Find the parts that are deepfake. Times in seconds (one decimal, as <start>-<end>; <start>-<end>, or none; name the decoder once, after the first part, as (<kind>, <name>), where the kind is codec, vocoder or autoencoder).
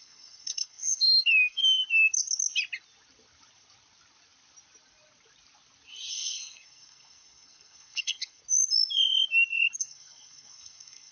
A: 0.0-1.6 (codec, SNAC); 6.1-8.4; 9.8-11.1